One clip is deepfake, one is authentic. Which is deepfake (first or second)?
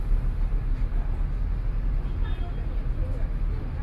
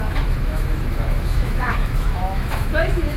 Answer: second